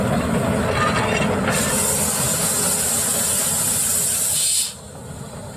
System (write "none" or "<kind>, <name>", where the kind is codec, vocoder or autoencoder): none